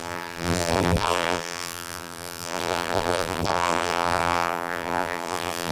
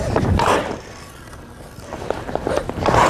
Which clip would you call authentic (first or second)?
second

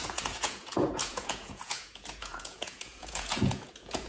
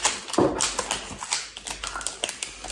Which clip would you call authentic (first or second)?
second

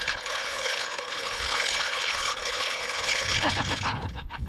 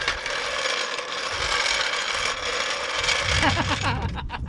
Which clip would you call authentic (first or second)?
second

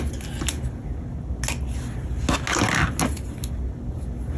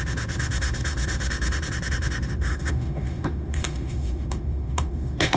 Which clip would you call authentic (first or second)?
first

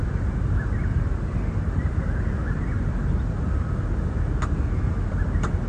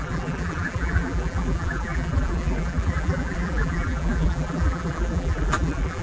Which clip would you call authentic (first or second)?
first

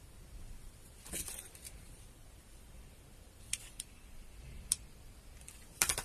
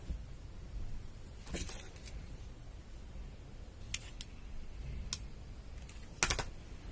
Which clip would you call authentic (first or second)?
second